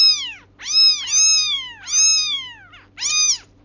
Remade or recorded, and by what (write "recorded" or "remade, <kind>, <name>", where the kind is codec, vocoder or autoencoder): recorded